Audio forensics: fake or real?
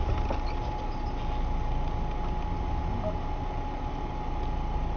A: real